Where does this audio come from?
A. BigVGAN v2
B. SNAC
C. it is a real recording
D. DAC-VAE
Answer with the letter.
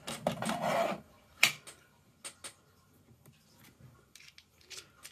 C